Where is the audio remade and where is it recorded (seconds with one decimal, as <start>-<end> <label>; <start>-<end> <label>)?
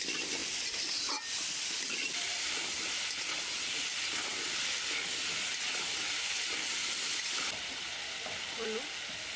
0.0-9.4 recorded